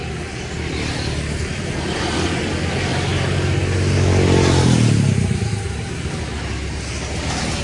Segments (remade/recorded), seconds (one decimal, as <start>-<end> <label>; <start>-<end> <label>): 0.0-7.6 recorded